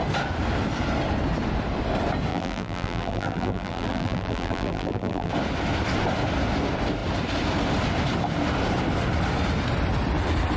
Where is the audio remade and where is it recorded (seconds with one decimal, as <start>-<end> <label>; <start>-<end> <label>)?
0.0-2.3 recorded; 2.3-5.3 remade; 5.3-10.6 recorded